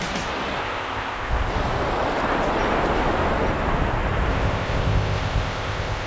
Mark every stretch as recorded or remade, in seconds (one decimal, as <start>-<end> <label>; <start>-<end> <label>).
0.0-0.6 recorded; 0.6-1.5 remade; 1.5-4.3 recorded; 4.3-6.1 remade